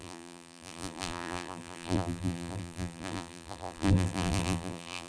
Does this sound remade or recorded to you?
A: remade